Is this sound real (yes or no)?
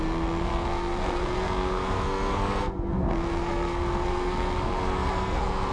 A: no